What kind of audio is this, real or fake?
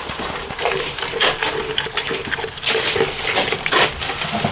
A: real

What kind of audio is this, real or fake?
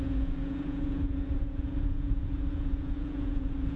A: fake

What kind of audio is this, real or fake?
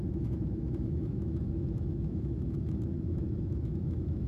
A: fake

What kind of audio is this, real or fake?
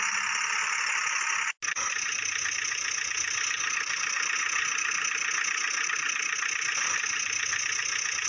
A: real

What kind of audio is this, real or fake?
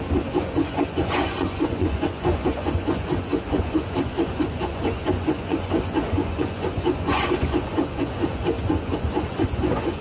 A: fake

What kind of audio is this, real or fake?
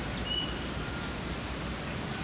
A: real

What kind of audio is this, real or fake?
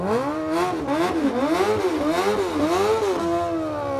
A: real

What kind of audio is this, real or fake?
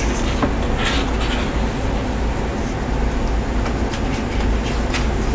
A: real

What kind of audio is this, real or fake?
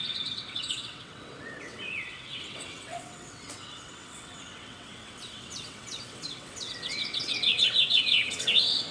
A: fake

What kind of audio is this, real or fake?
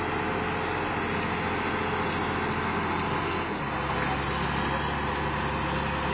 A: real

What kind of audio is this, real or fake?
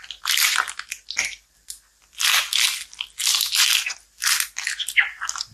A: real